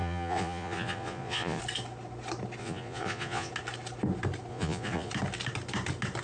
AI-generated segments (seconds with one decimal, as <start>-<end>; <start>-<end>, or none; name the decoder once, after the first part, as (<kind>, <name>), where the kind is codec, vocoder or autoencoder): 0.0-1.6 (vocoder, Vocos); 2.6-3.5; 4.5-5.1